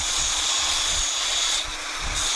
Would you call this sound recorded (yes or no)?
no